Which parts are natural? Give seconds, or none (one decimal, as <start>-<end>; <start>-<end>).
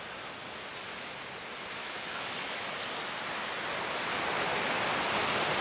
0.0-1.8; 2.7-5.6